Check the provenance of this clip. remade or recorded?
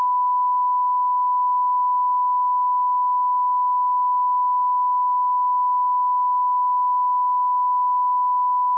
recorded